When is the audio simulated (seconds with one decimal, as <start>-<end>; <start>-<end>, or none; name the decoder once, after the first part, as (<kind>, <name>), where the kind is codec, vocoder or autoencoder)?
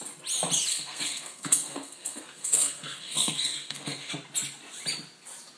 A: 0.7-4.1 (codec, SNAC)